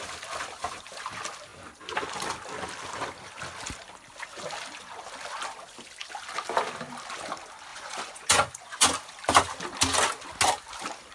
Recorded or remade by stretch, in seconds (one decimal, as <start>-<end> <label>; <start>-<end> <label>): 0.0-7.7 recorded; 7.7-8.9 remade; 8.9-11.1 recorded